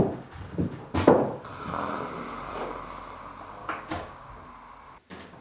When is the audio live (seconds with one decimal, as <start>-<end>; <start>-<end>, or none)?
0.0-3.6; 4.3-5.4